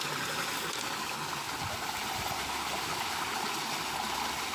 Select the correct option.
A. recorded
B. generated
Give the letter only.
A